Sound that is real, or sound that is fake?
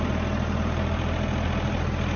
real